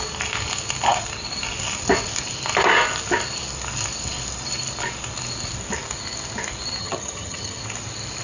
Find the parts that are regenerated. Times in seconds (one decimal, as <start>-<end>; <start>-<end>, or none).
6.8-7.6